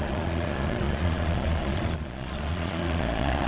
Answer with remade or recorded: remade